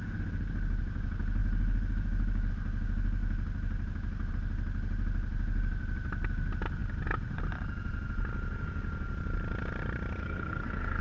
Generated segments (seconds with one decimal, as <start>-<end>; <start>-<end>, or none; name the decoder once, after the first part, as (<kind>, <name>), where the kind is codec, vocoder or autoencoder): 10.2-11.0 (codec, SNAC)